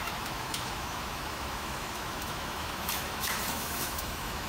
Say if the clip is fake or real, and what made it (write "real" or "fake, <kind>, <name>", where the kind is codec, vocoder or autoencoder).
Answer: fake, autoencoder, DAC-VAE